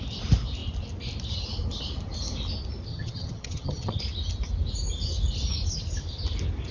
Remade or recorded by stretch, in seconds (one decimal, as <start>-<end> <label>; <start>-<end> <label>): 0.0-2.9 recorded; 2.9-4.0 remade; 4.0-6.7 recorded